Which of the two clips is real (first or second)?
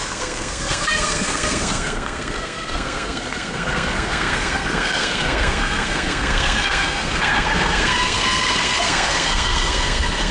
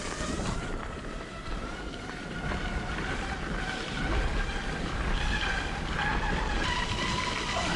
second